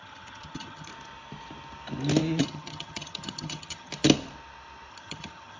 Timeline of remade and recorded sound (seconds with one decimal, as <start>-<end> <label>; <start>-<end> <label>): 0.0-0.9 remade; 0.9-2.4 recorded; 2.4-3.9 remade; 3.9-4.9 recorded; 4.9-5.6 remade